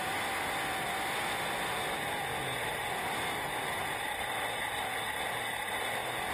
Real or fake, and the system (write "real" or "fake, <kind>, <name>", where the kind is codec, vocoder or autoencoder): real